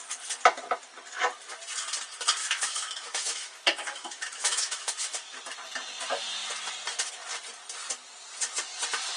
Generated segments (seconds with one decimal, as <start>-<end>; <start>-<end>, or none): 2.4-5.4